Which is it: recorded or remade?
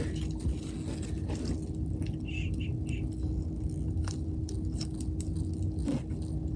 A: recorded